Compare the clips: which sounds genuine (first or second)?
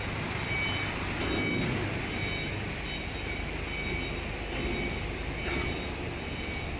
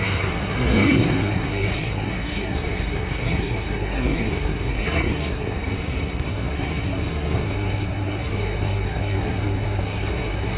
first